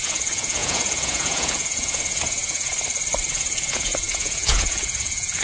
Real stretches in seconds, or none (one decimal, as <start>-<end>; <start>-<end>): 2.7-3.3